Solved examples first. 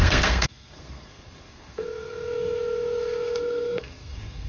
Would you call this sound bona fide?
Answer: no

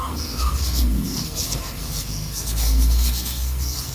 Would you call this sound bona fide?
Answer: no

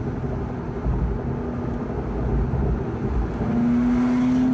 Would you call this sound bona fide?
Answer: yes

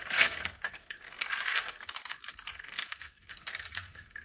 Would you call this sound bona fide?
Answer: no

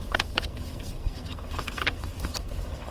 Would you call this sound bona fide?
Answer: no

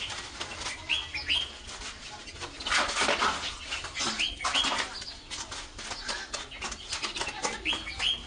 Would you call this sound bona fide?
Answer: yes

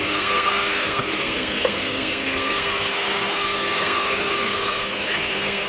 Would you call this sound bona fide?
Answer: no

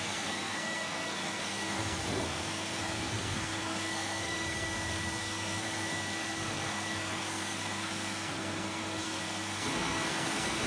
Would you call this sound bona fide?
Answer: no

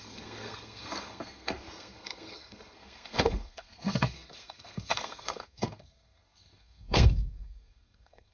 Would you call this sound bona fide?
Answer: no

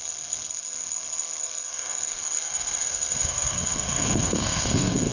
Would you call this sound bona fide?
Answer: no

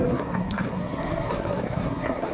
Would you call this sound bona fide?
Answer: no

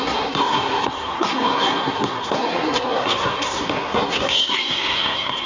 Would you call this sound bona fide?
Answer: no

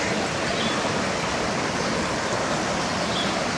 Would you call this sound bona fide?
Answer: yes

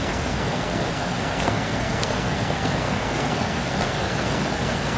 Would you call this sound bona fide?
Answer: no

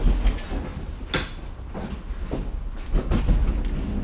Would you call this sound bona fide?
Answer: yes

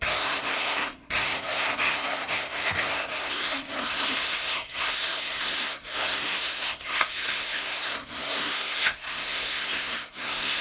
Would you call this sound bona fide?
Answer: no